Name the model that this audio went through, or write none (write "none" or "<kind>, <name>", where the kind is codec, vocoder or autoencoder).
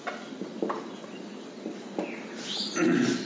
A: none